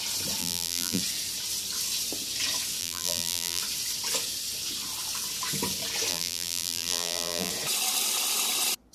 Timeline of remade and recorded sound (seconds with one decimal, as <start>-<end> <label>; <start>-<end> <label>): 0.0-0.4 recorded; 0.4-1.0 remade; 1.0-2.8 recorded; 2.8-3.6 remade; 3.6-6.1 recorded; 6.1-7.5 remade; 7.5-8.9 recorded